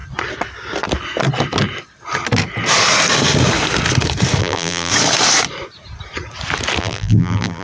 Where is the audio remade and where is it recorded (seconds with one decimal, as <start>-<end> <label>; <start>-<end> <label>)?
0.0-4.4 recorded; 4.4-4.9 remade; 4.9-6.8 recorded; 6.8-7.6 remade